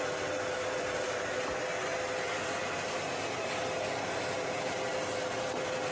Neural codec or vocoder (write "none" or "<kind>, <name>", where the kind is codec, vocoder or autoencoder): none